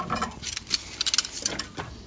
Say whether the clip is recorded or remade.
recorded